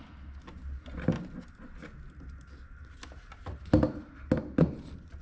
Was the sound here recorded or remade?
recorded